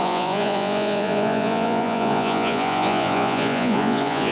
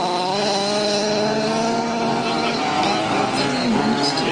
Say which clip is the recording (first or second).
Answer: second